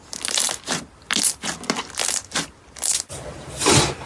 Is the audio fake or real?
real